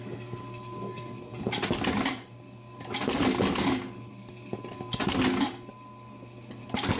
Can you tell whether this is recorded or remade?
recorded